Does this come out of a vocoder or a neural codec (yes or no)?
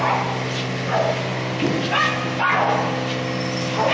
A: no